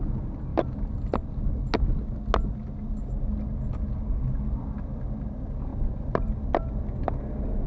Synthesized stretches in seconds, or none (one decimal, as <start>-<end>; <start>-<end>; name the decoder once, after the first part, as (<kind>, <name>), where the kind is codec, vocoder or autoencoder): none